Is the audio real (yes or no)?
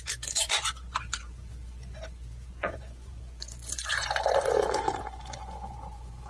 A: no